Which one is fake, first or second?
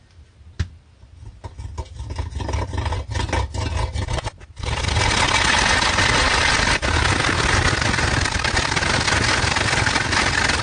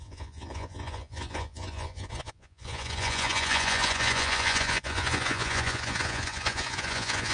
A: second